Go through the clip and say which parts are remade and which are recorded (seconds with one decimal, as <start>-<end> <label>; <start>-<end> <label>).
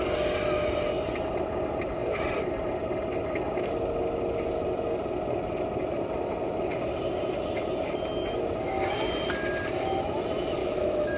0.0-10.6 recorded; 10.6-11.2 remade